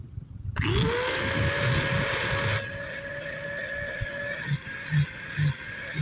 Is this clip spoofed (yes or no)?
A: no